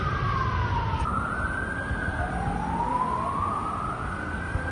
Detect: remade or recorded recorded